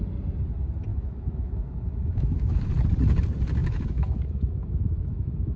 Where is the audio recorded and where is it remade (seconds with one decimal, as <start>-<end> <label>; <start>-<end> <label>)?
0.0-0.9 recorded; 0.9-2.7 remade; 2.7-3.6 recorded; 3.6-5.6 remade

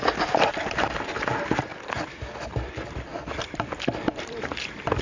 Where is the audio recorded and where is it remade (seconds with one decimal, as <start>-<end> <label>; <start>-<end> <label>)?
0.0-1.7 recorded; 1.7-2.7 remade; 2.7-3.1 recorded; 3.1-5.0 remade

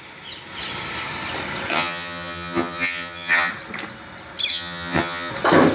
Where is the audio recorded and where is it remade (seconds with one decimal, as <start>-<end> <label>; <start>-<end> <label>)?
0.0-1.7 recorded; 1.7-3.5 remade; 3.5-4.5 recorded; 4.5-5.3 remade; 5.3-5.7 recorded

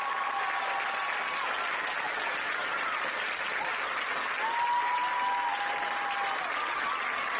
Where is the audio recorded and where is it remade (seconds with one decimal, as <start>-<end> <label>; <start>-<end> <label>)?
0.0-7.4 recorded

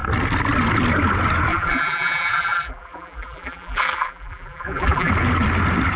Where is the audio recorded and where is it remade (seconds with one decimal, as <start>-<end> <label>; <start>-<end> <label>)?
0.0-1.5 recorded; 1.5-5.1 remade; 5.1-6.0 recorded